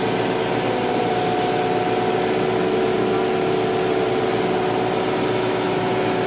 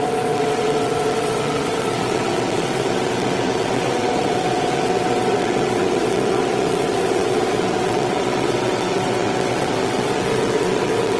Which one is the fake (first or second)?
second